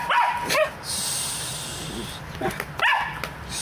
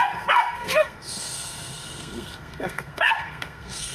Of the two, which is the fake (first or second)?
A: second